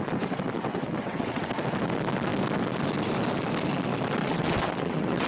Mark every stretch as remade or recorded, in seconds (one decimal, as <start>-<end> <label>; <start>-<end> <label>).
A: 0.0-0.7 recorded; 0.7-1.4 remade; 1.4-4.2 recorded; 4.2-5.3 remade